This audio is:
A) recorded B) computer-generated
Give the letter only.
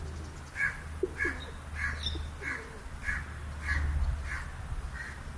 A